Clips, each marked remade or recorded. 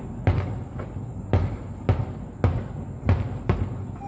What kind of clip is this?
recorded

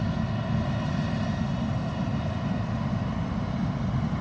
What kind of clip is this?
recorded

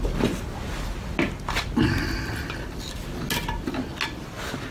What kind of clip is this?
recorded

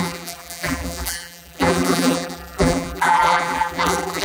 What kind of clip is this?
remade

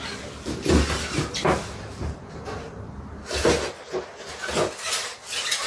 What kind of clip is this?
recorded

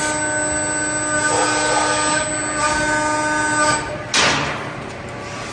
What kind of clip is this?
recorded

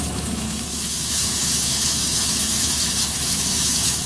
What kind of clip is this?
remade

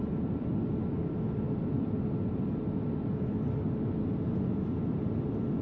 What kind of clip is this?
recorded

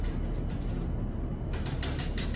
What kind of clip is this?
remade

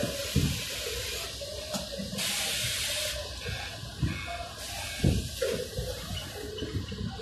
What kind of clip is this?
recorded